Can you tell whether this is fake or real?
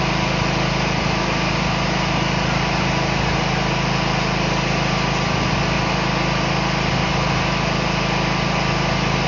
real